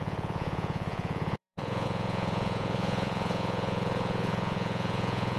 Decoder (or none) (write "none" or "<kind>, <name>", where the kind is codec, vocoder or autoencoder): vocoder, Vocos